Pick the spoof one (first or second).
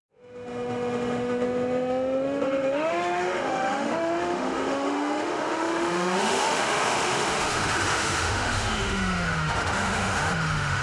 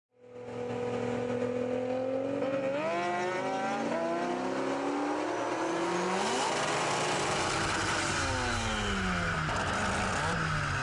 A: first